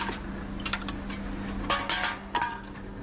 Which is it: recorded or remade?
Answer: recorded